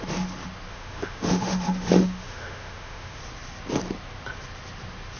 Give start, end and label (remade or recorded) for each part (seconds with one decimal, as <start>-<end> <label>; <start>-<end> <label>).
0.0-0.7 recorded; 0.7-3.2 remade; 3.2-5.2 recorded